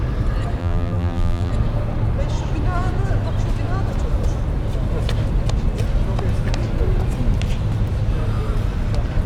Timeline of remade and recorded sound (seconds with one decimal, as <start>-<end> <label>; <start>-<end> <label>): 0.0-0.6 recorded; 0.6-1.5 remade; 1.5-9.3 recorded